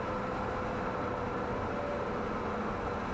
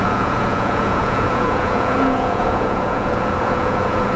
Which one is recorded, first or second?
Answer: first